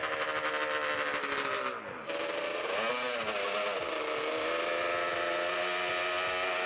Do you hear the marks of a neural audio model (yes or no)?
no